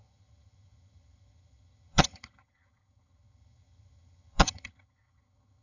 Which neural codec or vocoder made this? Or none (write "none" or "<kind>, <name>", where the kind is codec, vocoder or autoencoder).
vocoder, HiFi-GAN